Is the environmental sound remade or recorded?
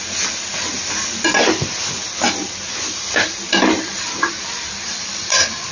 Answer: recorded